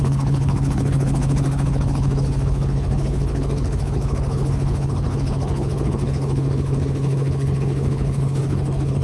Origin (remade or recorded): remade